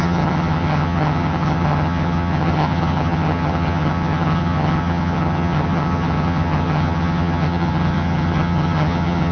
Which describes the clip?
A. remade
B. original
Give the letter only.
A